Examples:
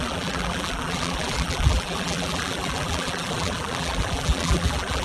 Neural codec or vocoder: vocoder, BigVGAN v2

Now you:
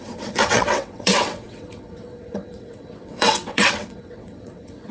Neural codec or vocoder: vocoder, WaveNeXt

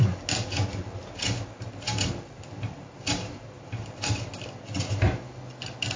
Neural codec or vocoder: none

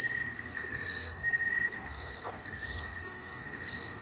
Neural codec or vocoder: codec, SNAC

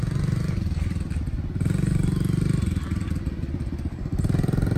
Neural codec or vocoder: none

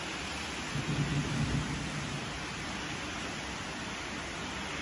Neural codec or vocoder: none